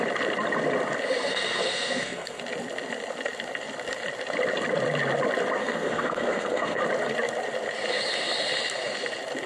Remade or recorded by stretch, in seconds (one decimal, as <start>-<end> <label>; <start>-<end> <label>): 0.0-1.3 recorded; 1.3-2.4 remade; 2.4-5.6 recorded; 5.6-6.8 remade; 6.8-9.5 recorded